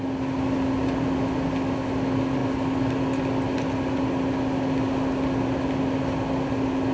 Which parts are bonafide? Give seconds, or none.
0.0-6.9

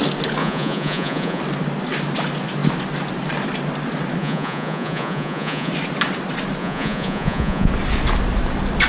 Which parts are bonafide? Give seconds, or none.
0.0-0.4; 1.4-4.2; 5.7-6.6; 7.7-8.9

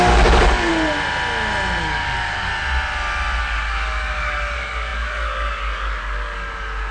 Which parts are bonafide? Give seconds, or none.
0.7-1.8; 2.5-3.4